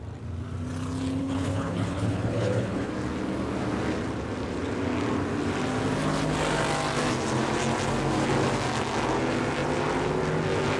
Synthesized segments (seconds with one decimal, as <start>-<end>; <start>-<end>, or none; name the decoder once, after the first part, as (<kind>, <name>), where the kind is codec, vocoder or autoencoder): 1.2-2.9 (codec, HILCodec)